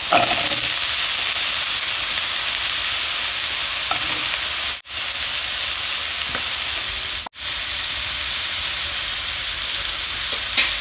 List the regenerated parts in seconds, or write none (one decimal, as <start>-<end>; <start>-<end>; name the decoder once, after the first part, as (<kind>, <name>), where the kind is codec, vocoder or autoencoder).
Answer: none